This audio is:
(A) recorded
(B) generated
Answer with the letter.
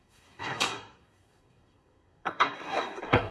B